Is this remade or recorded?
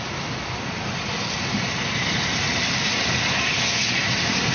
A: recorded